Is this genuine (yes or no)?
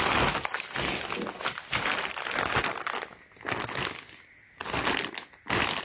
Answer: yes